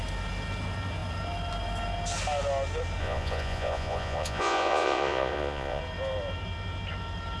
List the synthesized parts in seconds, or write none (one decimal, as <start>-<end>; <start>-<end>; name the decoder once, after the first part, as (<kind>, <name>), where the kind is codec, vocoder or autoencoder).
3.0-5.8 (vocoder, Vocos)